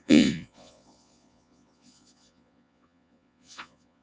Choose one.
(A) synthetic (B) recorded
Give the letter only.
A